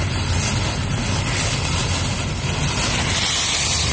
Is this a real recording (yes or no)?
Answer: yes